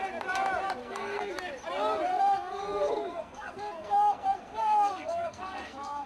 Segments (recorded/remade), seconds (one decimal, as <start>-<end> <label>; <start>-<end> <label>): 0.0-0.8 recorded; 0.8-1.3 remade; 1.3-2.1 recorded; 2.1-6.1 remade